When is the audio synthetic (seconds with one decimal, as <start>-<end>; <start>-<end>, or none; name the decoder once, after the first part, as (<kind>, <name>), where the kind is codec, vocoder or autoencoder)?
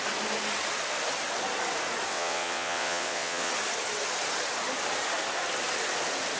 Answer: 2.1-3.5 (vocoder, WaveNeXt)